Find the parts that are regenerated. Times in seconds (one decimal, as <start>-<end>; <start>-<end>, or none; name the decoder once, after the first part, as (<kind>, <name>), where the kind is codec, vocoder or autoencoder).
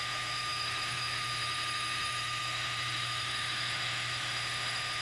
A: 0.0-5.0 (autoencoder, DAC-VAE)